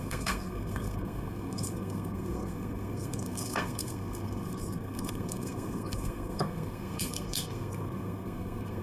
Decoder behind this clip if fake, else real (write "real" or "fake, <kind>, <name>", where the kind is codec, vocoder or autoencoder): fake, codec, SNAC